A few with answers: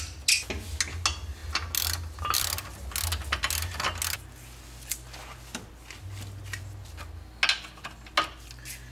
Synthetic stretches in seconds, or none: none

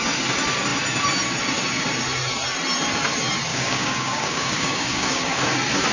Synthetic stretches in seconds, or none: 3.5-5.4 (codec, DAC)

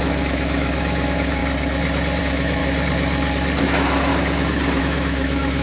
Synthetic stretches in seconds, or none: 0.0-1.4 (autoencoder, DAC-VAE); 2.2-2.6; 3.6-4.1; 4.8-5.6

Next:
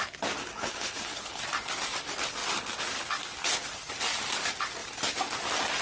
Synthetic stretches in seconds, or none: 0.4-1.4 (codec, HILCodec)